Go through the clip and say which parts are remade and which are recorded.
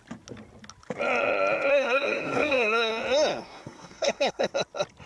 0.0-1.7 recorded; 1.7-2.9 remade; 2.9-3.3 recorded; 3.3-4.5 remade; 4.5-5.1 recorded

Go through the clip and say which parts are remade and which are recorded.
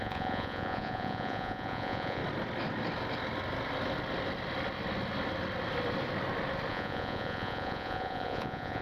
0.0-2.2 remade; 2.2-6.7 recorded; 6.7-8.8 remade